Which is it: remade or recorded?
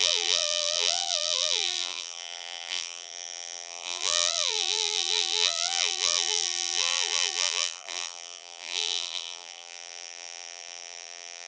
remade